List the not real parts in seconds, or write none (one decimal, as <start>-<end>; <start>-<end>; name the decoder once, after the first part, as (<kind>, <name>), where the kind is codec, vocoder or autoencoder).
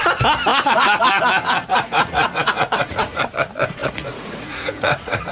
0.5-1.2 (vocoder, Vocos); 1.7-3.2; 3.8-5.3